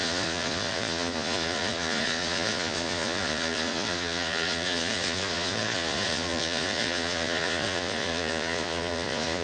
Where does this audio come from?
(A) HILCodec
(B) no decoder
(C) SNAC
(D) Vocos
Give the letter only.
D